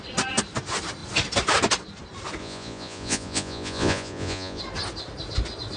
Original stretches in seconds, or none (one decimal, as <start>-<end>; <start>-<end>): 0.0-2.4; 4.6-5.8